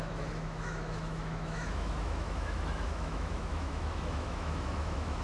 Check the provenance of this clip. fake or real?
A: fake